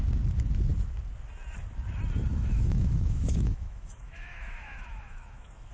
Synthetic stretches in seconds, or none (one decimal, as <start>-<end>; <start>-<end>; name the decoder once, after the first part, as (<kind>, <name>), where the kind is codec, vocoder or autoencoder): 2.3-5.7 (autoencoder, DAC-VAE)